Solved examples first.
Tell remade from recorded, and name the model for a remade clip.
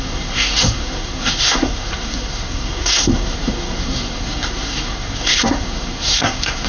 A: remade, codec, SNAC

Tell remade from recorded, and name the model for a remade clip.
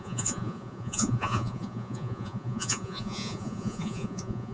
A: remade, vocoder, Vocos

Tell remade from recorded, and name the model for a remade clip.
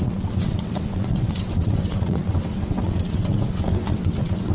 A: remade, vocoder, WaveNeXt